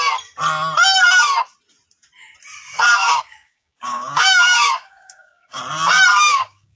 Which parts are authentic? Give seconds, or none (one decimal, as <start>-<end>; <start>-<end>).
0.0-3.0; 5.6-6.1